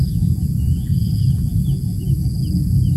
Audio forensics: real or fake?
fake